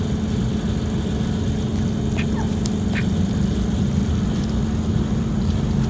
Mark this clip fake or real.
real